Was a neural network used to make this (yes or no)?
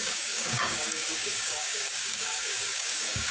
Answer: yes